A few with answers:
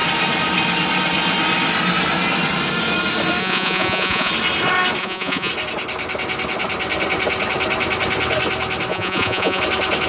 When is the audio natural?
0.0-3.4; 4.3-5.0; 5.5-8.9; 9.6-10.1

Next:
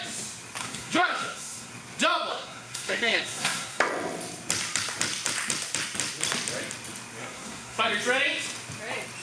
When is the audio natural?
0.0-0.6; 1.7-2.3; 3.8-7.2; 7.8-9.2